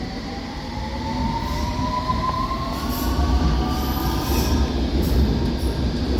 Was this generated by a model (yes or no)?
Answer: no